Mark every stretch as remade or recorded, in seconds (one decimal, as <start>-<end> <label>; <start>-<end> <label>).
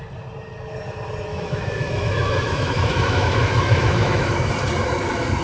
0.0-1.3 recorded; 1.3-4.5 remade; 4.5-5.4 recorded